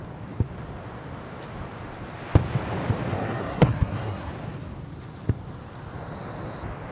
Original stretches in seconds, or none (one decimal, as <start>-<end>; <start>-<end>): 0.0-3.1; 4.3-6.9